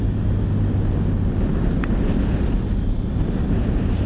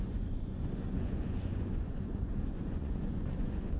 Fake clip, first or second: second